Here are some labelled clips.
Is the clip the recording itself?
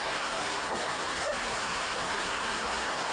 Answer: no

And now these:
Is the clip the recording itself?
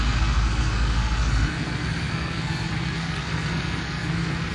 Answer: no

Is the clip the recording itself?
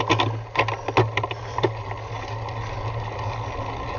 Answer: yes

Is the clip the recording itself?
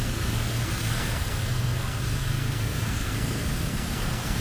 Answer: no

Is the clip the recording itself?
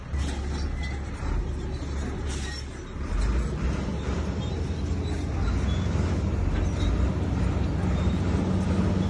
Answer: yes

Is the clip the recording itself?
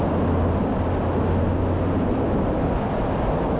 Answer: yes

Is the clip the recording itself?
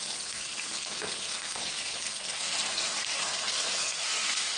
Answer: no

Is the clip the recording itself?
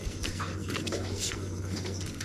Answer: no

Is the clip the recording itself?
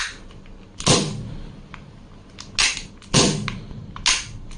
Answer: yes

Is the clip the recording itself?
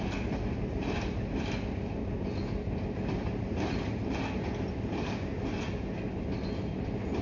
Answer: yes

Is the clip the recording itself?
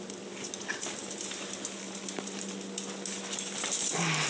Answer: yes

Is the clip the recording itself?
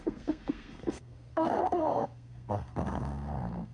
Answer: no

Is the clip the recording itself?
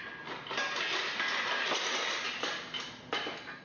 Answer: yes